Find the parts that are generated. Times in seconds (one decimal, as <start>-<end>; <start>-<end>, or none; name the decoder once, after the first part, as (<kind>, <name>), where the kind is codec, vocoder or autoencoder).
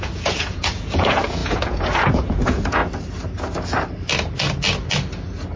0.0-2.8 (vocoder, Vocos)